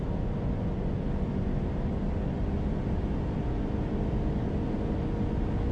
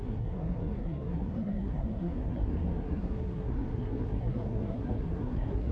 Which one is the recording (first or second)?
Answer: first